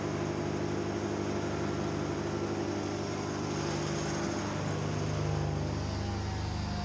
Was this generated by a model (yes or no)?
no